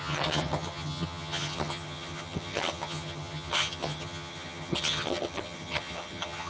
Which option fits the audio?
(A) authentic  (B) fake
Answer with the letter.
B